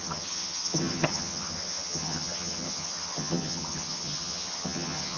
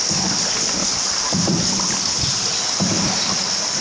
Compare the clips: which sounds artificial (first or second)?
first